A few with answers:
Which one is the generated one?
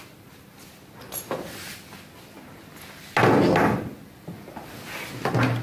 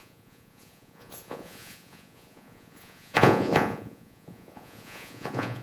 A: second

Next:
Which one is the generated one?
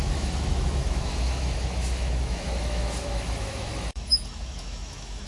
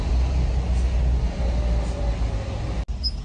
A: first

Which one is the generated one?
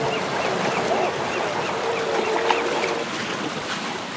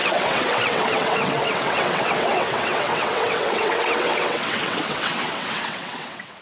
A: second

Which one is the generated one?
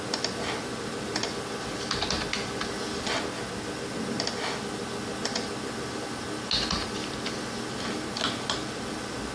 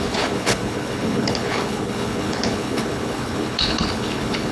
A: second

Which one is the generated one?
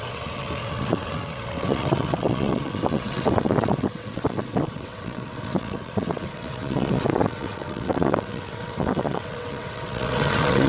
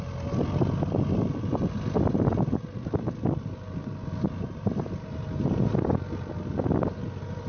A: first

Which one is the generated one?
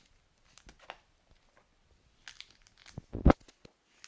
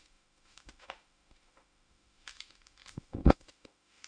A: second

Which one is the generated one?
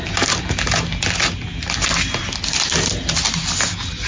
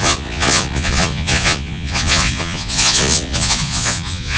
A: second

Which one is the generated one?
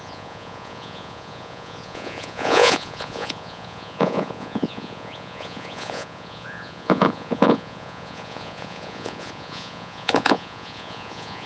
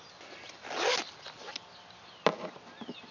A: first